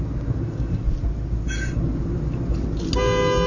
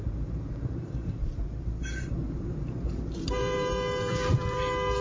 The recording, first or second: first